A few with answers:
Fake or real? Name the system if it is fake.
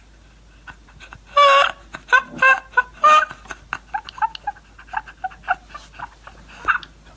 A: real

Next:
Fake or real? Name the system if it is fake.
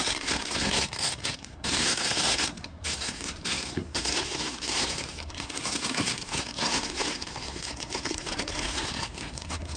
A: fake, codec, SNAC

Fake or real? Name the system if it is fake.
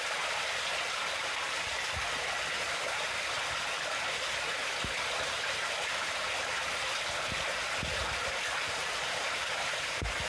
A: real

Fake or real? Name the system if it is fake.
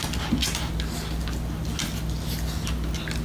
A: real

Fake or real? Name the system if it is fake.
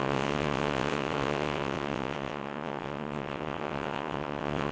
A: fake, vocoder, WaveNeXt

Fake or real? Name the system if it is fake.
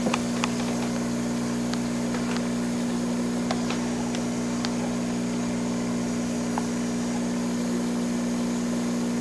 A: real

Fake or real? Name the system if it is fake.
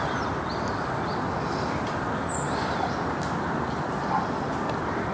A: real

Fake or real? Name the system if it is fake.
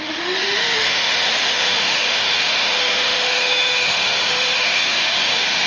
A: fake, autoencoder, DAC-VAE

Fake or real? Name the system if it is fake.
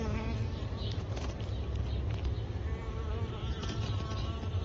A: real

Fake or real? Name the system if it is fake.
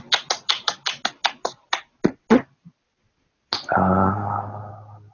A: real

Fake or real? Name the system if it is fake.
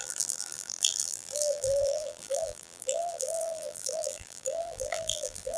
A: fake, vocoder, BigVGAN v2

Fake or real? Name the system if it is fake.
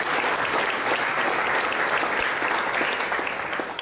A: real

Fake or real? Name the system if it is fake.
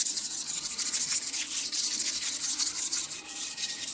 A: fake, vocoder, HiFi-GAN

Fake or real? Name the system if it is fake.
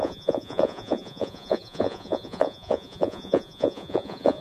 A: fake, vocoder, Vocos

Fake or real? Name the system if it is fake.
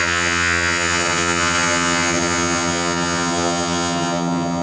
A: fake, vocoder, HiFi-GAN